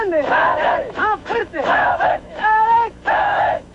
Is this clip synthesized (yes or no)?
yes